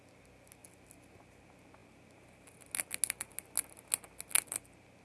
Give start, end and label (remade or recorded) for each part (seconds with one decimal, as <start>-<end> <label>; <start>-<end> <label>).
0.0-5.0 recorded